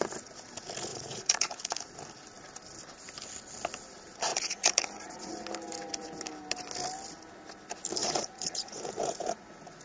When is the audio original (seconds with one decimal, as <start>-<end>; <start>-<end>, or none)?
0.0-0.9; 2.0-4.3; 5.3-8.0